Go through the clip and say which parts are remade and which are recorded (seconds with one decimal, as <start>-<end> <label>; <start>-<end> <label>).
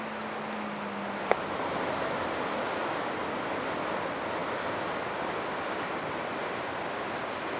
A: 0.0-7.6 recorded